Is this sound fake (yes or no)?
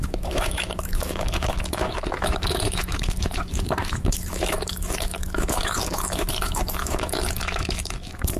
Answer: yes